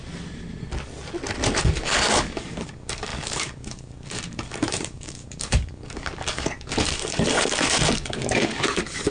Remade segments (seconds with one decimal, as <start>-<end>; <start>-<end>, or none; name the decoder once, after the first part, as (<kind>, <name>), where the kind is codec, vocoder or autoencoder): 1.6-9.1 (codec, DAC)

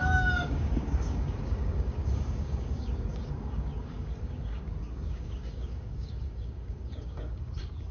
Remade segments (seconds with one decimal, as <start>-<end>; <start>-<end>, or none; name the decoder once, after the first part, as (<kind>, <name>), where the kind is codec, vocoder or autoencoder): 0.0-7.9 (codec, DAC)

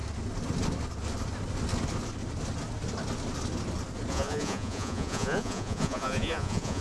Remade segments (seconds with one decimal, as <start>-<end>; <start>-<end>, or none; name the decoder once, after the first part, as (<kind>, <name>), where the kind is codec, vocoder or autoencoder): 4.1-6.8 (vocoder, Vocos)

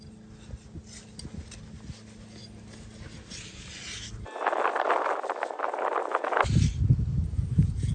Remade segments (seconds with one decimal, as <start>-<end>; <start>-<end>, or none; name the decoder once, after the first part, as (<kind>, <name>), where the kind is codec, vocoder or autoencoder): none

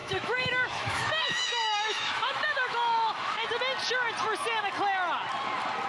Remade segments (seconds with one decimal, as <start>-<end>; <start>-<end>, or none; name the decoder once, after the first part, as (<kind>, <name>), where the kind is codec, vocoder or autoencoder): 0.0-3.5 (autoencoder, DAC-VAE)

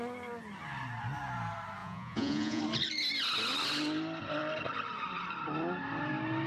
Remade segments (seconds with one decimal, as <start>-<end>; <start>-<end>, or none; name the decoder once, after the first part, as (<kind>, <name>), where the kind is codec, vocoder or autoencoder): 1.8-2.6 (vocoder, Vocos)

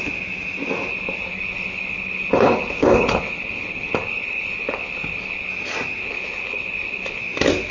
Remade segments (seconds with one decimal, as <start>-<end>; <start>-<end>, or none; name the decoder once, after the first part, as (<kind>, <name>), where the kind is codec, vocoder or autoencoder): 0.9-5.5 (codec, HILCodec); 6.0-7.2